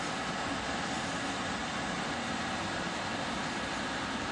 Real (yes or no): yes